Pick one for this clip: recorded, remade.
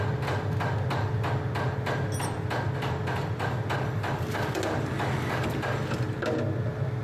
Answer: recorded